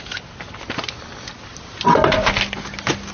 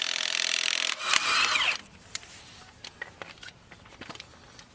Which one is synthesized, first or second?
second